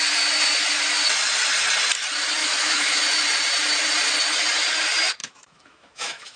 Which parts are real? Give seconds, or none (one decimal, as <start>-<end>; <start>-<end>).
0.0-2.4; 3.0-5.2